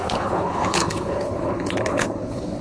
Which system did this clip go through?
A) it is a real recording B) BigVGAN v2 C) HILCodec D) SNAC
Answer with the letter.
C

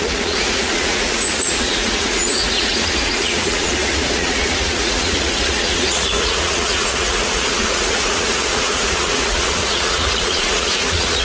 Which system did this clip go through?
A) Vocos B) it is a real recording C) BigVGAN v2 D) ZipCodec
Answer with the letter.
A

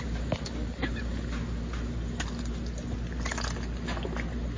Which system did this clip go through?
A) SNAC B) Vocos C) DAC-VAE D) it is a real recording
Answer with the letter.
D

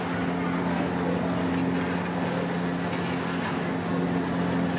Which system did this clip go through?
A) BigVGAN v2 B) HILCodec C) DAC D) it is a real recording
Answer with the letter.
D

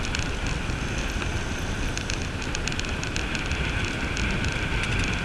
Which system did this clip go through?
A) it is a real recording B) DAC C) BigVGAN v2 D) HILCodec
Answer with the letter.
A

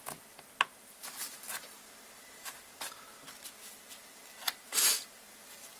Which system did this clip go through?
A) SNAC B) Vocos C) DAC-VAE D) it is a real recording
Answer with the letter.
D